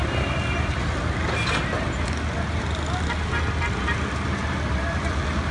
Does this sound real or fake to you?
real